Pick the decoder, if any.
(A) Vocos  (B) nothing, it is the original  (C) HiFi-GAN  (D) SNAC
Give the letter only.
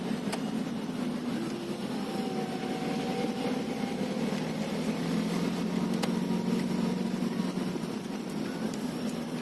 B